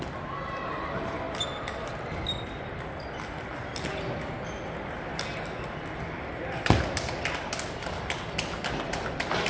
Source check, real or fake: real